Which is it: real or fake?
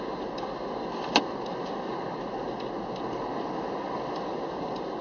real